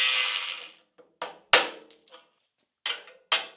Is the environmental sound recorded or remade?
recorded